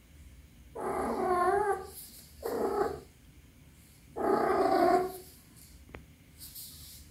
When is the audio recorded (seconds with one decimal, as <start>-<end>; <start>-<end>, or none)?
0.0-2.4; 3.0-4.5; 5.6-7.1